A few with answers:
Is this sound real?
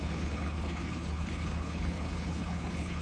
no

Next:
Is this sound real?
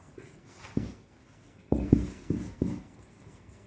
no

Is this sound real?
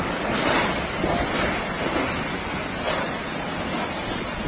yes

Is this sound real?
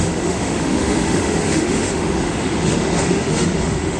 no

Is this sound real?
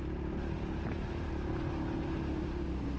yes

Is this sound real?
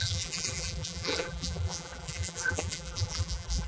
no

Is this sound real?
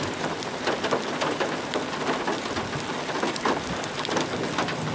yes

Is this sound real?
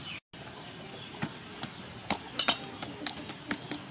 yes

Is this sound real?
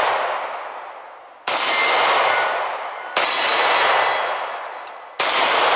yes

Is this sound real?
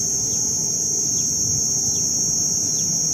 yes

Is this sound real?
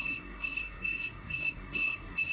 no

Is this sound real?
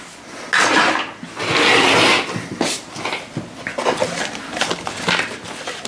yes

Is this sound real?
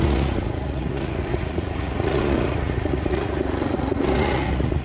no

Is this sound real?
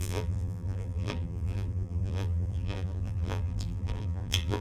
no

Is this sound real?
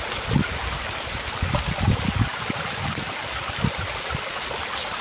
yes